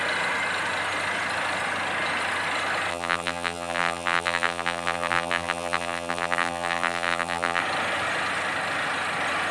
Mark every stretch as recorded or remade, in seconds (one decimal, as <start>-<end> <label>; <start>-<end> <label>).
0.0-2.9 recorded; 2.9-7.6 remade; 7.6-9.5 recorded